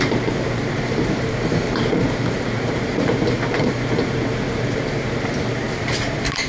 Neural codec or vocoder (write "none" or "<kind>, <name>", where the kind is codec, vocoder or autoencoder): vocoder, BigVGAN v2